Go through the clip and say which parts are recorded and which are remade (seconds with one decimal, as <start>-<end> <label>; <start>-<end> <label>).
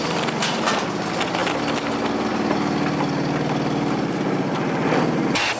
0.0-5.6 recorded